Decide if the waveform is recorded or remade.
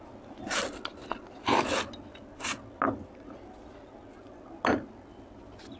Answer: recorded